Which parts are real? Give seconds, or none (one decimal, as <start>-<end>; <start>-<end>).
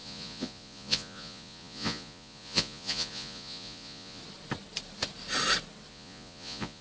4.2-5.9